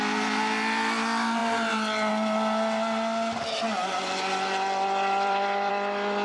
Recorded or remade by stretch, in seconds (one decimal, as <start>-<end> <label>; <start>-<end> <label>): 0.0-3.8 recorded; 3.8-5.7 remade; 5.7-6.2 recorded